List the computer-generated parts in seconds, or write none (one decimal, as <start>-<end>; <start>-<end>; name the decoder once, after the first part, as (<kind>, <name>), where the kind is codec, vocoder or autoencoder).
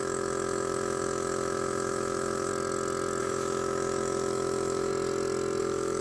0.0-2.5 (autoencoder, DAC-VAE); 3.2-4.9; 5.6-6.0